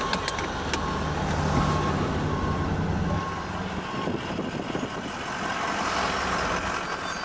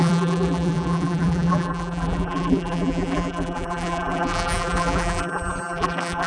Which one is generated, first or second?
second